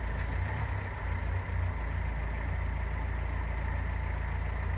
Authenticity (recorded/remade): recorded